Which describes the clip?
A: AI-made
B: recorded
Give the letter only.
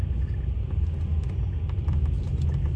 B